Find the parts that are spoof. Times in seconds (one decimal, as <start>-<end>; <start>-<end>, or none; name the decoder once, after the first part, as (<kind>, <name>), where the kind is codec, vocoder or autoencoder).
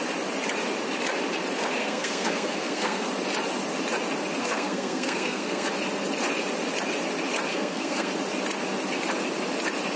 1.8-3.1 (codec, SNAC); 4.4-5.7; 7.5-8.1